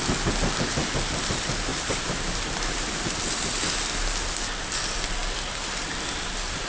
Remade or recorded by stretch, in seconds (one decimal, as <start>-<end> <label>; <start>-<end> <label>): 0.0-1.7 recorded; 1.7-3.8 remade; 3.8-6.7 recorded

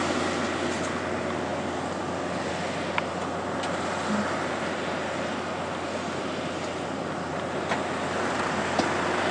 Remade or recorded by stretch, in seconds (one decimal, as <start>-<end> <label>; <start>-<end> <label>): 0.0-9.3 recorded

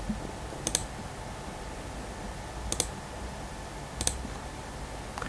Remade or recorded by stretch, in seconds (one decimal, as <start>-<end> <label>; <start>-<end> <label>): 0.0-5.3 recorded

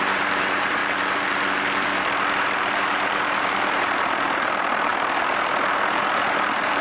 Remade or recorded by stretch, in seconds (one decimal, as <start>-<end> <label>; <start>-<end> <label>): 0.0-0.8 remade; 0.8-2.3 recorded; 2.3-6.8 remade